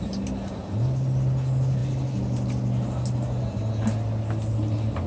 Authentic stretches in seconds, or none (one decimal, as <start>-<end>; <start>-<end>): 0.0-5.1